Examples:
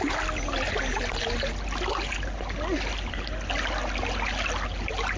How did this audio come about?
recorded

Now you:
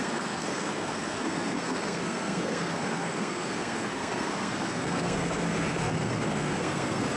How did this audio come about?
remade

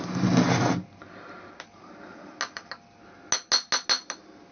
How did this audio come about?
recorded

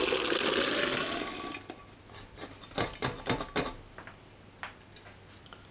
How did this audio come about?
recorded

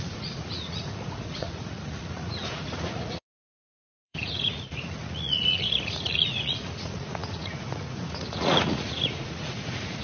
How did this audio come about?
remade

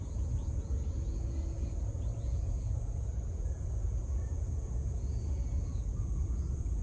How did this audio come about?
remade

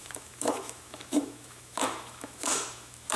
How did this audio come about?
remade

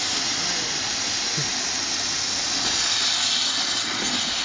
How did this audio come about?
recorded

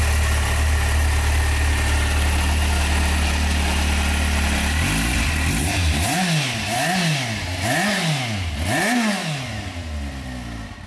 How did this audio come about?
recorded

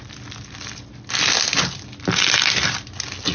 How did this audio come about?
recorded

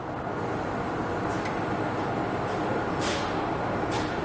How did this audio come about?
recorded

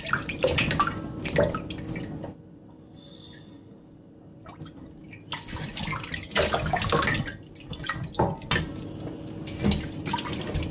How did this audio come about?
recorded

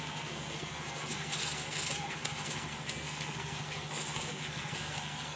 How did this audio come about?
remade